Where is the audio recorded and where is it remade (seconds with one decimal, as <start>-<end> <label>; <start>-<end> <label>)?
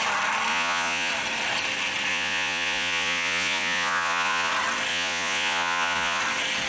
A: 0.0-0.5 recorded; 0.5-1.1 remade; 1.1-2.1 recorded; 2.1-4.5 remade; 4.5-4.9 recorded; 4.9-6.2 remade; 6.2-6.7 recorded